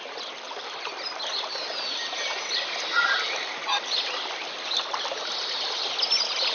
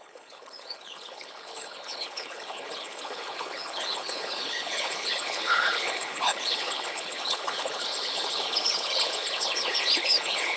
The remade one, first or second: second